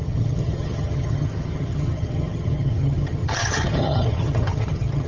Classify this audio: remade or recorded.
remade